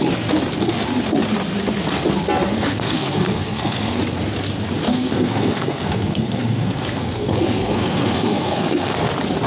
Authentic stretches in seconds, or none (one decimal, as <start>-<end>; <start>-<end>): 0.0-2.7; 4.0-4.9; 9.1-9.5